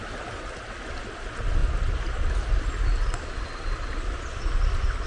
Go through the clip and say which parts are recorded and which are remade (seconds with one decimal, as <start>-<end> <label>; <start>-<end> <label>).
0.0-5.1 recorded